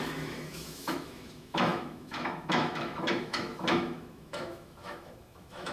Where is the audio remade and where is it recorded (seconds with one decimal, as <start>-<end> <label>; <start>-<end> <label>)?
0.0-5.7 remade